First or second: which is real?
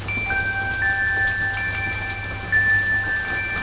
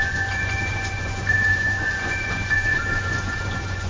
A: first